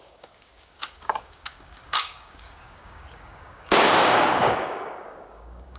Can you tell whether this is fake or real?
fake